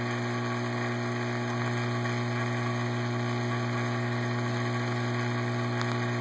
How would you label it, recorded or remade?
recorded